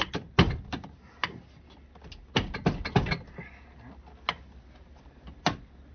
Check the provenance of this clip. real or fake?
real